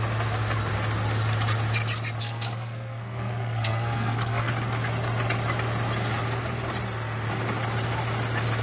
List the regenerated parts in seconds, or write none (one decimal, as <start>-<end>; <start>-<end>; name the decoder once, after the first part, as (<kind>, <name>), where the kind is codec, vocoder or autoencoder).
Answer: 2.2-4.5 (codec, SNAC)